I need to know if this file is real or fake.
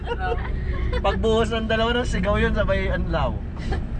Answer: real